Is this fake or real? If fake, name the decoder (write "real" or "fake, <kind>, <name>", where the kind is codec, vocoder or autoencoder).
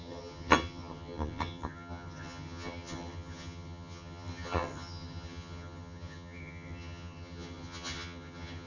fake, vocoder, HiFi-GAN